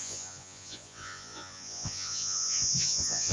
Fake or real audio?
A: fake